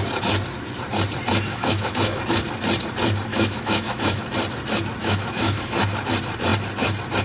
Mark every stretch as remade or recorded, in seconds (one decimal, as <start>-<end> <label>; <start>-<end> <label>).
0.0-1.5 recorded; 1.5-2.2 remade; 2.2-3.3 recorded; 3.3-4.2 remade; 4.2-5.0 recorded; 5.0-5.8 remade; 5.8-7.2 recorded